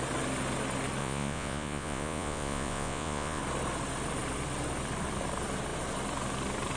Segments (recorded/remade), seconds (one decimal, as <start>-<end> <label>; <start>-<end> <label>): 0.0-1.0 recorded; 1.0-3.4 remade; 3.4-6.8 recorded